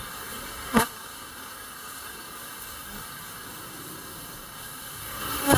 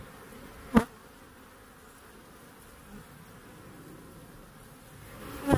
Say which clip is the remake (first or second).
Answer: first